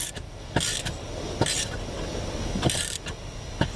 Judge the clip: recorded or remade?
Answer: recorded